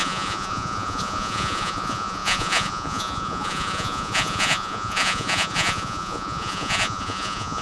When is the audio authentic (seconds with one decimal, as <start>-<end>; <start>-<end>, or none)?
none